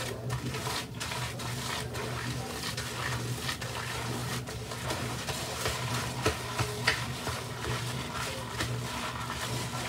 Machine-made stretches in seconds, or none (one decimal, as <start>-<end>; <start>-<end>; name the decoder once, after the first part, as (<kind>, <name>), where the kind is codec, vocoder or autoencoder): 0.6-1.1 (vocoder, BigVGAN v2); 4.2-5.9; 6.9-7.7